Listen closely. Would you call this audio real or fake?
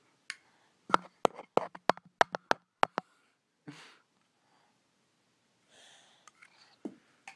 real